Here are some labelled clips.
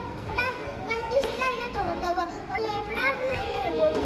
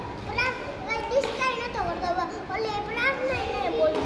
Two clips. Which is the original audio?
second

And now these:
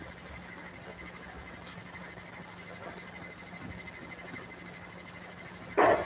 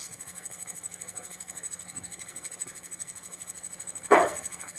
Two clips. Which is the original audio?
first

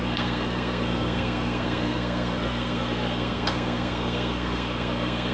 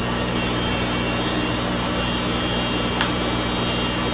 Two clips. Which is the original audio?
second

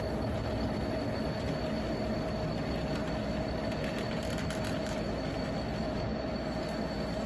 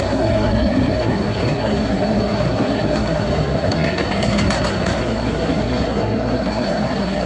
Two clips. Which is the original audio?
first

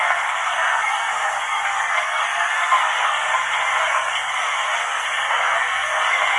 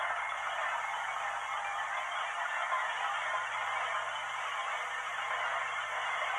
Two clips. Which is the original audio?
second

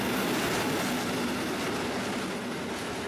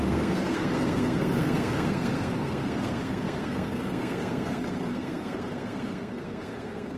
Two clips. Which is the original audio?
first